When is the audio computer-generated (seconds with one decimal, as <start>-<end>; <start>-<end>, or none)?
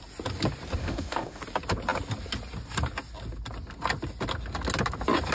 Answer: 0.8-1.4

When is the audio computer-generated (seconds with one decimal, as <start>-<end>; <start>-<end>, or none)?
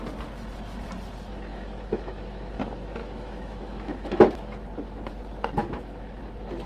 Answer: 1.5-2.5; 3.0-5.1; 5.6-6.2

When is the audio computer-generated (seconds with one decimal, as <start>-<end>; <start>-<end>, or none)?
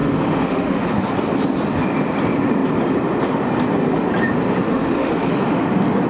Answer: 0.0-0.9; 4.7-5.3